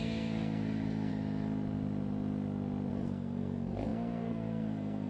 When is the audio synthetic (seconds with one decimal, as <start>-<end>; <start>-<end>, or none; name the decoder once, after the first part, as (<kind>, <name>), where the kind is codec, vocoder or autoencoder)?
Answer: 0.0-1.1 (codec, SNAC); 2.9-5.1